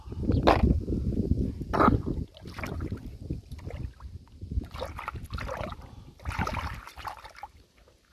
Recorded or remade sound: recorded